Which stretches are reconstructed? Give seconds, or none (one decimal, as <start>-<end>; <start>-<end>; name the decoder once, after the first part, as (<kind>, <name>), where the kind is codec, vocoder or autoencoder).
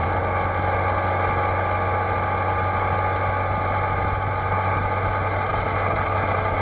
none